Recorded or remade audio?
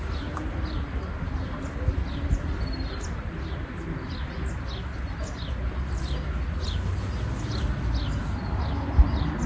recorded